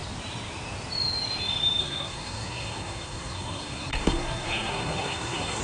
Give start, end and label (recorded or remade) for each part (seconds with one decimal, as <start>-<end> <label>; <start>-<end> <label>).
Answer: 0.0-1.8 recorded; 1.8-5.6 remade